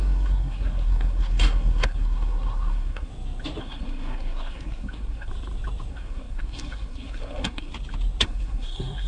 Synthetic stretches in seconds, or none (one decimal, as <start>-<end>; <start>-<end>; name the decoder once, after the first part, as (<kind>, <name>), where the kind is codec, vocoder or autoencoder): 0.0-3.1 (codec, SNAC); 3.6-5.3; 5.9-7.7; 8.2-9.1